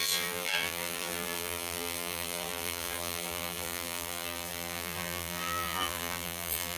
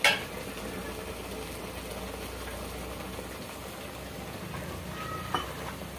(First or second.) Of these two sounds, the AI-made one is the first